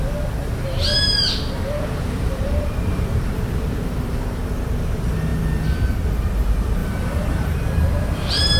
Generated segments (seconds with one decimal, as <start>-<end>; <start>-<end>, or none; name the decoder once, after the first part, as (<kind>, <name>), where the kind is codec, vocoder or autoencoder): 0.4-4.4 (vocoder, BigVGAN v2); 6.8-8.6